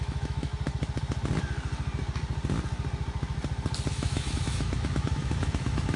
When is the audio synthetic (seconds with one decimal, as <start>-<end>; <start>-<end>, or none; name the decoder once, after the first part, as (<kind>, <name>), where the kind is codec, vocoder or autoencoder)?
0.0-0.5 (autoencoder, DAC-VAE); 3.9-6.0